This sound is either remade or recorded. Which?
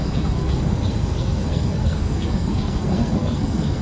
remade